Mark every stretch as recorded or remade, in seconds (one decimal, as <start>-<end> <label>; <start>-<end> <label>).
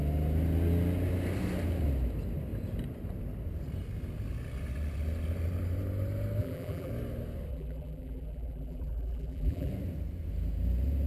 0.0-6.4 recorded; 6.4-6.9 remade; 6.9-7.5 recorded; 7.5-9.7 remade; 9.7-11.1 recorded